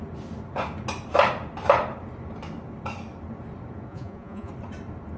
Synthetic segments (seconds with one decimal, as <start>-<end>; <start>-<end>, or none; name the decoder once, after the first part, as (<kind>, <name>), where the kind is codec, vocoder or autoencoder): 3.9-4.5 (vocoder, Vocos)